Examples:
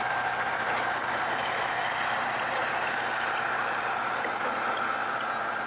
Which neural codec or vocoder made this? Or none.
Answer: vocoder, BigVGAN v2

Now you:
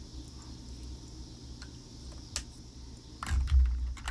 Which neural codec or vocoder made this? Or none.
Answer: none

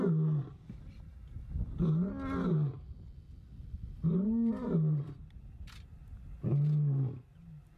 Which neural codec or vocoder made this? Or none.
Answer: none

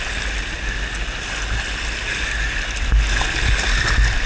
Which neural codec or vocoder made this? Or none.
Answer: none